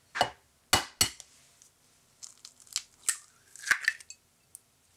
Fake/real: real